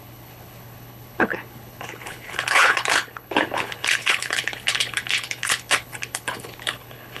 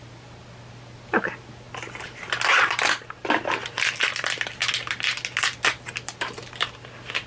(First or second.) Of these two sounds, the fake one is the first